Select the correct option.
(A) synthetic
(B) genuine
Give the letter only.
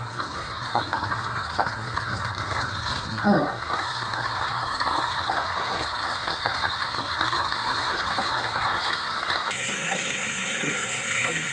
A